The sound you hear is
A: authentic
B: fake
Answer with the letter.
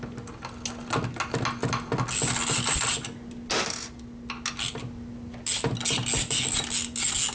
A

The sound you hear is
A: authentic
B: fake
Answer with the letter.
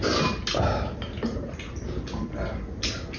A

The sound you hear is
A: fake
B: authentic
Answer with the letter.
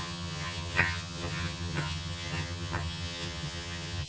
A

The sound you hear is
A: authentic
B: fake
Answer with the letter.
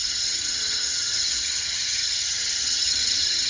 B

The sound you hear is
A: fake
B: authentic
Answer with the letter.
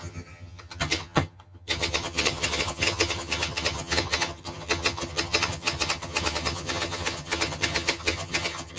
A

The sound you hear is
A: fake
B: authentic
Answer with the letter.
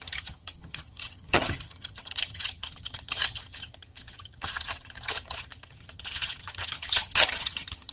A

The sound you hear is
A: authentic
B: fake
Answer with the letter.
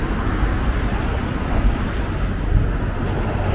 A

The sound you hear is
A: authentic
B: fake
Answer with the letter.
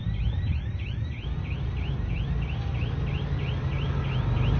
A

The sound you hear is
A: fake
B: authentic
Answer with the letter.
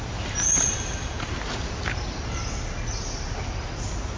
B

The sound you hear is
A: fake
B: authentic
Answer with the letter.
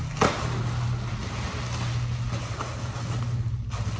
B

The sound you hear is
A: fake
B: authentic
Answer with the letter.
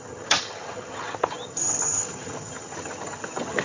A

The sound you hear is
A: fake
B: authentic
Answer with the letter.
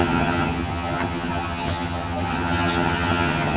A